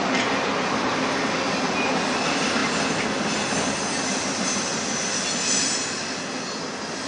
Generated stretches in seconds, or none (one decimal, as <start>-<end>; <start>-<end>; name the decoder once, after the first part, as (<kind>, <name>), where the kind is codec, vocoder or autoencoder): none